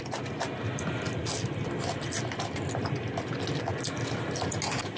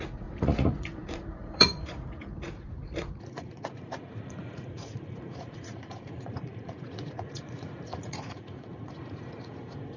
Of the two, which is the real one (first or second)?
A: first